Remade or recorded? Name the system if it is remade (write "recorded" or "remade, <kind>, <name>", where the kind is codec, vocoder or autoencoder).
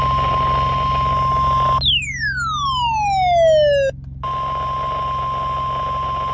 recorded